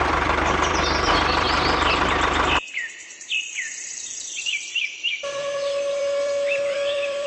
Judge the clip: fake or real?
fake